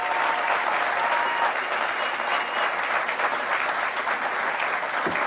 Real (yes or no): yes